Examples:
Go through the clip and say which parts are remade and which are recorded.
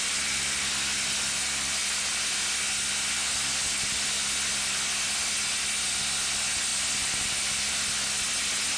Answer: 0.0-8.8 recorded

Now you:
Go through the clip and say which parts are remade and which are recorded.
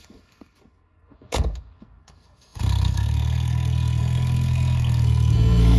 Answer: 0.0-5.8 remade